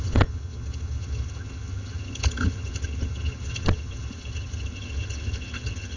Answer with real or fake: fake